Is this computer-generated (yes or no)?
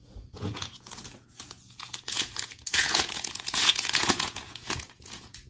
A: yes